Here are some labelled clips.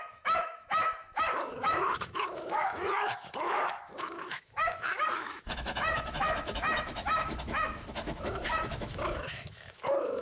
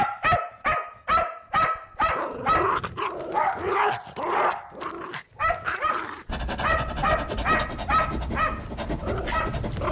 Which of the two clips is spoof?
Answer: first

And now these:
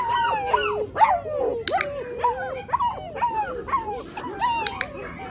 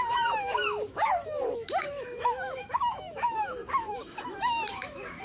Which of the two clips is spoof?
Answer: second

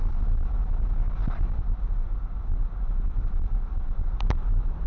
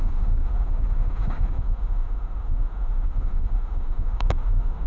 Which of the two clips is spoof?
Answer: second